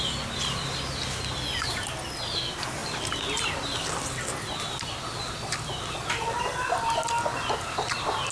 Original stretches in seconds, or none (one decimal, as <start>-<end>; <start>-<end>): 0.0-8.3